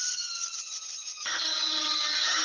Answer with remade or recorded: remade